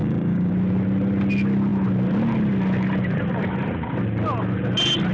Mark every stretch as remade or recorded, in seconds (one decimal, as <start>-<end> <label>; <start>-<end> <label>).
0.0-0.5 remade; 0.5-5.1 recorded

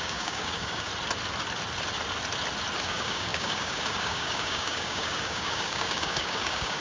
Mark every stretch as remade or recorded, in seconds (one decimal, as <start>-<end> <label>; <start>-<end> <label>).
0.0-0.9 remade; 0.9-2.8 recorded; 2.8-6.8 remade

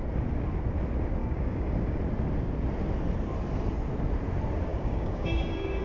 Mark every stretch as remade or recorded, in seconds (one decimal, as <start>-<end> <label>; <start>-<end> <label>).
0.0-1.2 recorded; 1.2-2.0 remade; 2.0-4.7 recorded; 4.7-5.8 remade

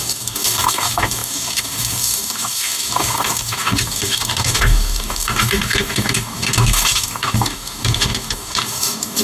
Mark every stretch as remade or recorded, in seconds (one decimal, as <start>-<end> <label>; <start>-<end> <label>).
0.0-9.2 remade